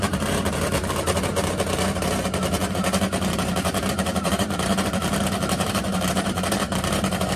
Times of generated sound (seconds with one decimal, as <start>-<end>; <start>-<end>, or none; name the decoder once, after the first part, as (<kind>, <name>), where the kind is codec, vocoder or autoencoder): 0.0-7.4 (vocoder, BigVGAN v2)